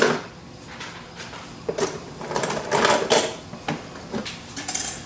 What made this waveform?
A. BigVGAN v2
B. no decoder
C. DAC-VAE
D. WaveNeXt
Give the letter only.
B